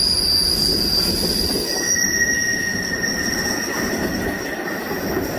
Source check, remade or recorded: recorded